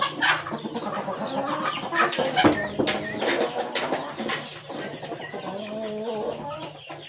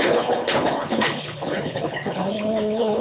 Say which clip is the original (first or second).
first